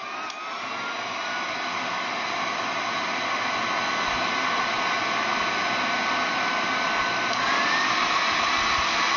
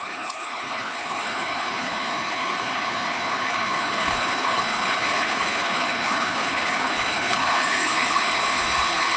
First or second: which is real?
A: first